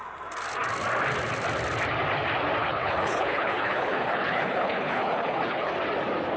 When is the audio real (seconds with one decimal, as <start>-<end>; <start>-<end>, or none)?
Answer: 0.0-2.6; 5.7-6.4